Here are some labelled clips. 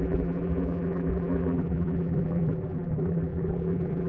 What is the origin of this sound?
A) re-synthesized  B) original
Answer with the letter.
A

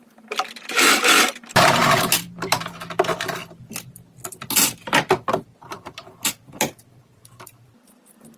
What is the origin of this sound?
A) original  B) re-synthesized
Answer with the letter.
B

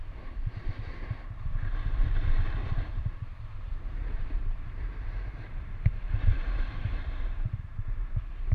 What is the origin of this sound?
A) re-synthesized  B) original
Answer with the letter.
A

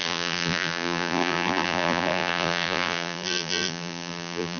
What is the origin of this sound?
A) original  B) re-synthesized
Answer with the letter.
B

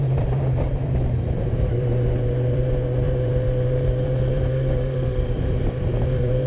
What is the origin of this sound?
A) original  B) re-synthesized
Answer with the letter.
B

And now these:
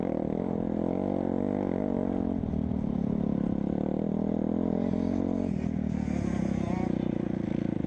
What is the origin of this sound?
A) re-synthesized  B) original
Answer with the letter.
B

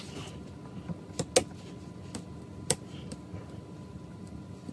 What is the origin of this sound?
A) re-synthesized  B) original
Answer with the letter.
B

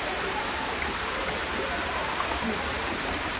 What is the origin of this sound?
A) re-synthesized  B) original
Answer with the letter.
A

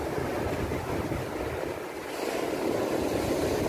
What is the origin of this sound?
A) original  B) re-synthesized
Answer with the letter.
B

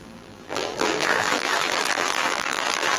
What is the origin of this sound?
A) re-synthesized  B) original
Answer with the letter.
A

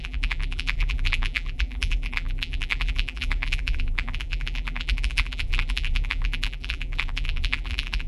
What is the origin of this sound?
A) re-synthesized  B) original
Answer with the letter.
A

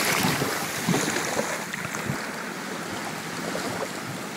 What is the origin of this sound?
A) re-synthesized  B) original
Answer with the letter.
B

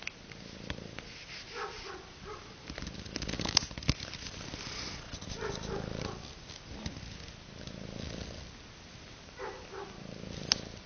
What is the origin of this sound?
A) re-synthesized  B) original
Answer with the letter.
B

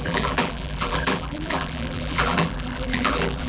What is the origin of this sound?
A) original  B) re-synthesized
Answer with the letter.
B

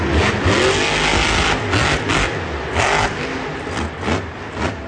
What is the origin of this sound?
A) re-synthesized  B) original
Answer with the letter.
B